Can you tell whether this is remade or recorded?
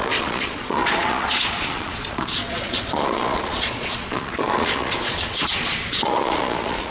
remade